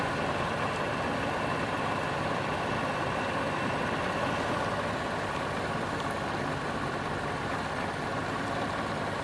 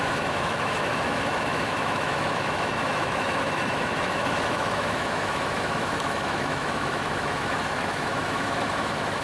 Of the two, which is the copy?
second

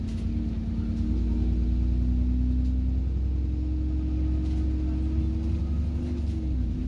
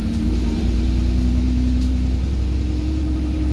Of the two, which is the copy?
second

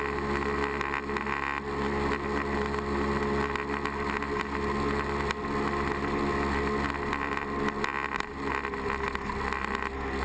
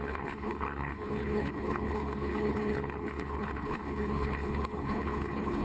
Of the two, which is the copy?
second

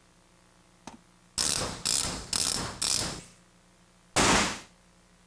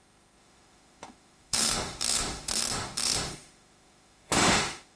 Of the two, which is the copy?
second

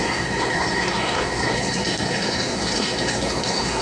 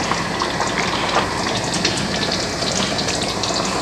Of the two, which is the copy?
first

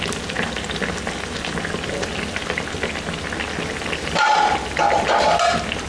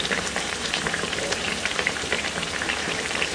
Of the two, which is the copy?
second